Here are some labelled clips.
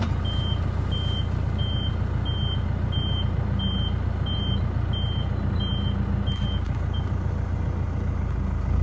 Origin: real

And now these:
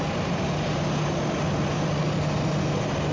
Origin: real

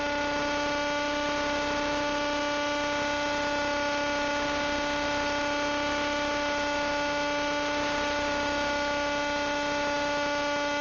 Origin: real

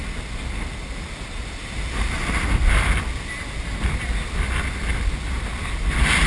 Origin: real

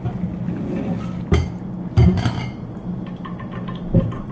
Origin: real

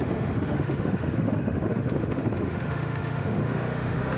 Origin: fake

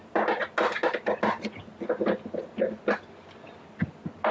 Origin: real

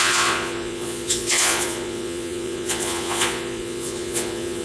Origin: fake